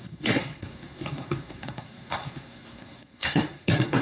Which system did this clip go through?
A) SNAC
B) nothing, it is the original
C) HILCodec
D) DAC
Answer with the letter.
A